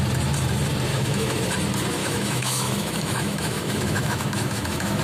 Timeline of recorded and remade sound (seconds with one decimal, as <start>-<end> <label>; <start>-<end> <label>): 0.0-0.9 recorded; 0.9-1.4 remade; 1.4-2.0 recorded; 2.0-5.0 remade

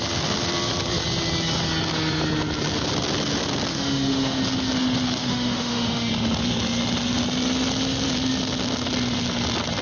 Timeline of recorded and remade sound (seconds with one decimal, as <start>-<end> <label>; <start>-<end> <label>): 0.0-3.7 recorded; 3.7-4.4 remade; 4.4-5.2 recorded; 5.2-6.1 remade; 6.1-9.8 recorded

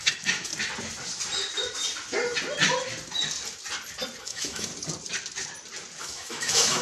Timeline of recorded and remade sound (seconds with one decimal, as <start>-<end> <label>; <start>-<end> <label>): 0.0-0.5 remade; 0.5-4.2 recorded; 4.2-4.7 remade; 4.7-6.0 recorded; 6.0-6.8 remade